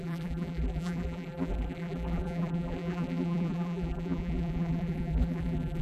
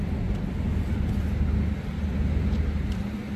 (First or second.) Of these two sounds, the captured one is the second